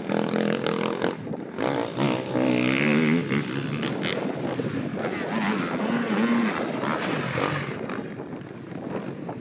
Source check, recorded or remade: recorded